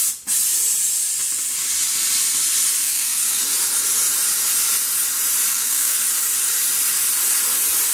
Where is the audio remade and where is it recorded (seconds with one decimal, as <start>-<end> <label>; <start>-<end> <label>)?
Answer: 0.0-2.8 recorded; 2.8-3.4 remade; 3.4-5.5 recorded; 5.5-6.0 remade; 6.0-7.9 recorded

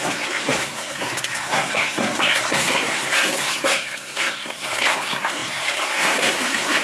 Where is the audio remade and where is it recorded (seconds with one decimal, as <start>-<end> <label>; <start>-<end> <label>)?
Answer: 0.0-6.8 remade

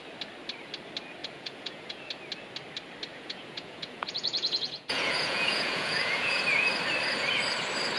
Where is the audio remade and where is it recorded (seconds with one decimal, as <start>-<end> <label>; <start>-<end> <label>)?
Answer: 0.0-1.2 recorded; 1.2-2.0 remade; 2.0-3.1 recorded; 3.1-6.4 remade; 6.4-8.0 recorded

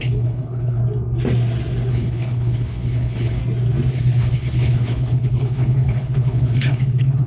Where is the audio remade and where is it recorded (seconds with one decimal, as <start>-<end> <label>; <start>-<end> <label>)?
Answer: 0.0-0.8 remade; 0.8-1.9 recorded; 1.9-3.4 remade; 3.4-3.9 recorded; 3.9-7.3 remade